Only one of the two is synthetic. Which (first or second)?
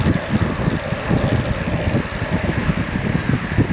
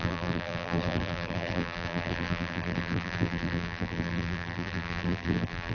second